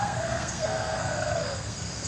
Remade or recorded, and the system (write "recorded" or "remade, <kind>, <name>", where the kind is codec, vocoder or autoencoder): remade, codec, SNAC